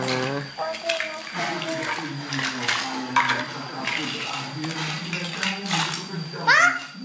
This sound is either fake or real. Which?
real